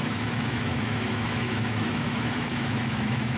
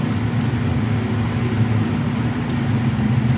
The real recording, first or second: second